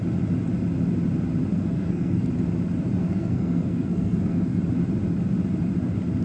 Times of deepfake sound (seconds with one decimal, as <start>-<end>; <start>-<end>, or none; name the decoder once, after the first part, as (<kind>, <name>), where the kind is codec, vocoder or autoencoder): 1.5-2.3 (codec, SNAC); 3.0-4.6